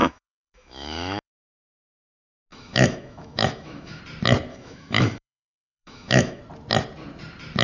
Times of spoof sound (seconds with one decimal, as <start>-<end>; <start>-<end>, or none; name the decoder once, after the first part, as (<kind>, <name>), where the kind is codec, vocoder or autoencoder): 0.0-1.4 (autoencoder, DAC-VAE); 2.5-4.0; 4.5-6.4